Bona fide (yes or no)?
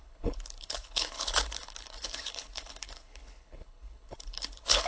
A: no